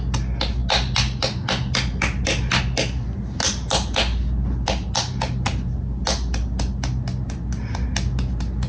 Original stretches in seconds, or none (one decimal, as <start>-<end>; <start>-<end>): 0.0-8.7